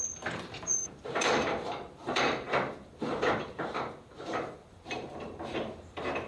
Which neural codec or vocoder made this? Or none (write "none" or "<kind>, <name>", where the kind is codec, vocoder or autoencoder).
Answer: vocoder, BigVGAN v2